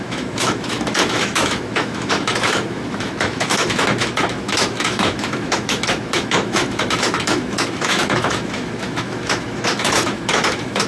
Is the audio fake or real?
fake